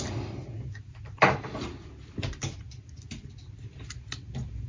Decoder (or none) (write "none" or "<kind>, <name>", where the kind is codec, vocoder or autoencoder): none